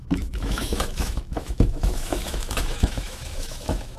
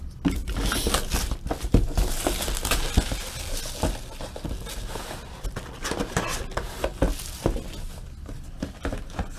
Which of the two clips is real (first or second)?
second